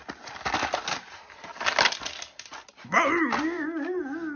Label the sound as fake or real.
real